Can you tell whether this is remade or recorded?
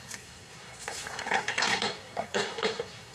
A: remade